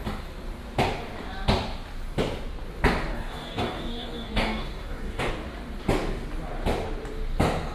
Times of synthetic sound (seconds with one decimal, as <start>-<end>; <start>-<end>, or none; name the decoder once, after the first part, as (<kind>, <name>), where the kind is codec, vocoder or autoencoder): 3.1-5.3 (codec, DAC)

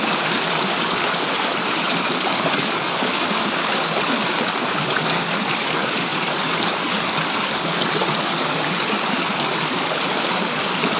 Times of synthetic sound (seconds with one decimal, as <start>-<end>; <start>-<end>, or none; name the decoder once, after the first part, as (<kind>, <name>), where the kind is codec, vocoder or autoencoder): 0.0-9.5 (codec, DAC); 10.1-11.0

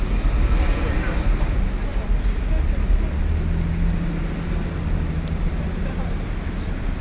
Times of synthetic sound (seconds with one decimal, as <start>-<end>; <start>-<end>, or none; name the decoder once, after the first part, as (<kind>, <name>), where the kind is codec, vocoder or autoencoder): none

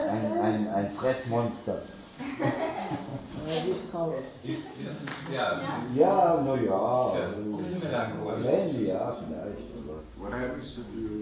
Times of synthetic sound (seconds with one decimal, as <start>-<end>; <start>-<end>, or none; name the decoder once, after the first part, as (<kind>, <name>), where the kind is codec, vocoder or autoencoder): 2.2-5.1 (codec, DAC); 10.0-11.2

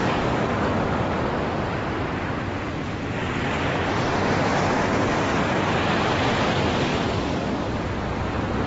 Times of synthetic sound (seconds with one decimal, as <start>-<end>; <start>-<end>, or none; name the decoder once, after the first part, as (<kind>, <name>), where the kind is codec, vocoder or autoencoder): 0.0-0.7 (codec, DAC); 5.3-6.0; 6.9-7.6

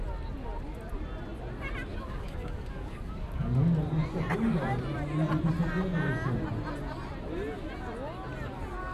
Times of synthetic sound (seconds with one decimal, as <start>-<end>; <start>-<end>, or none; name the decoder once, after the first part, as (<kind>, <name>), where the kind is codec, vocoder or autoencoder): 1.9-3.7 (codec, DAC)

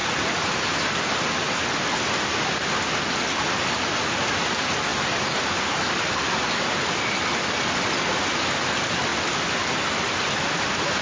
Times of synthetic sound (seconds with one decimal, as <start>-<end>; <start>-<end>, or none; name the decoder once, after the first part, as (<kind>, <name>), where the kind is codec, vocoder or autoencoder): none

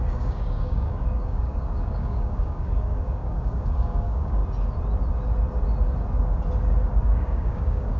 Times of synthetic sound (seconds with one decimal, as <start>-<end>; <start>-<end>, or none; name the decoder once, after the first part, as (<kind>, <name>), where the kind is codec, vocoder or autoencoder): 0.0-4.4 (codec, DAC); 7.0-8.0